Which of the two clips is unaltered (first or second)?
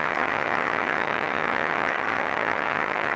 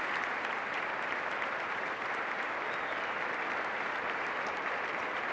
second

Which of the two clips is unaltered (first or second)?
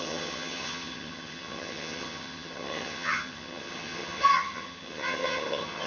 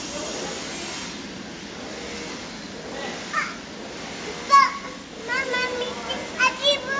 second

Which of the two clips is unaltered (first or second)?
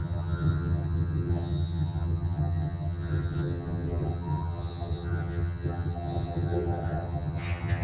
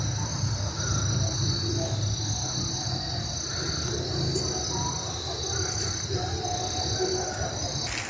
second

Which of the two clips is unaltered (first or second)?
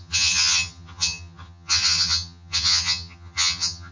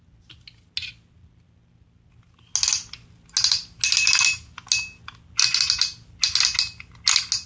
second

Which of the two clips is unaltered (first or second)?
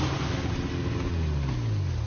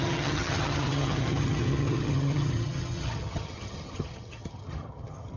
first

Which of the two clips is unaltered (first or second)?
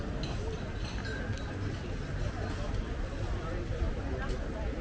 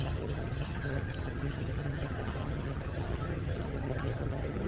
first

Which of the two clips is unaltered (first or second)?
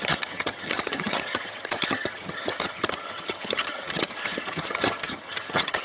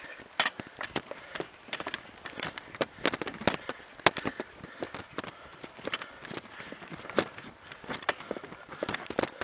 second